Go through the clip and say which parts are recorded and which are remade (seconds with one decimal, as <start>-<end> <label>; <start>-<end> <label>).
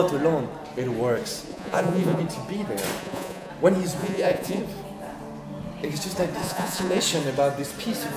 0.0-1.5 recorded; 1.5-2.2 remade; 2.2-3.0 recorded; 3.0-3.5 remade; 3.5-4.0 recorded; 4.0-4.6 remade; 4.6-6.4 recorded; 6.4-7.0 remade; 7.0-8.2 recorded